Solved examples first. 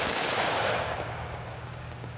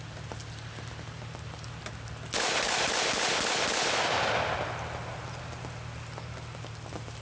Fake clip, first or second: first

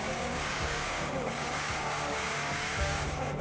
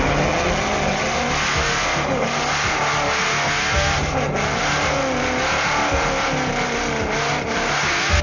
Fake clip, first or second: first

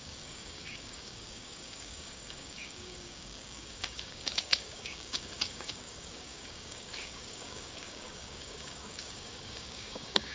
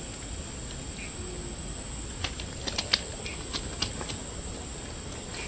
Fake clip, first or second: first